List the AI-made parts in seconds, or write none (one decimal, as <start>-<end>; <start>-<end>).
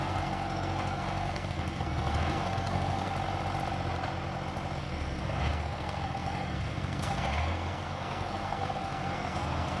0.0-3.1; 4.8-9.8